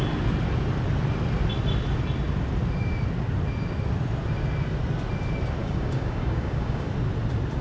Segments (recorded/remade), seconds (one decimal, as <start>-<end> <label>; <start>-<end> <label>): 0.0-5.6 recorded; 5.6-6.9 remade; 6.9-7.6 recorded